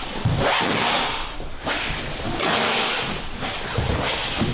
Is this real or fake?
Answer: real